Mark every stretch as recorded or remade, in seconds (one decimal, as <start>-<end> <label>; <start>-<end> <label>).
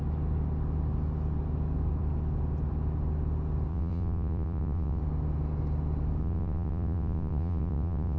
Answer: 0.0-3.7 recorded; 3.7-5.0 remade; 5.0-6.2 recorded; 6.2-8.2 remade